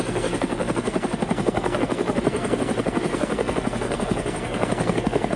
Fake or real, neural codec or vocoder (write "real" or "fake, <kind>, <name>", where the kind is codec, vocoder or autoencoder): fake, codec, SNAC